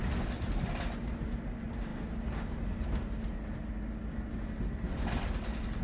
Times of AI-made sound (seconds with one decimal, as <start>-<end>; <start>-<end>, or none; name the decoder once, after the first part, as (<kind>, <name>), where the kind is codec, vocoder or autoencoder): none